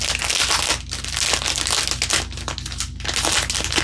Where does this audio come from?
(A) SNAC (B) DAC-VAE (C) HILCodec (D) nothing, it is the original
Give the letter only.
D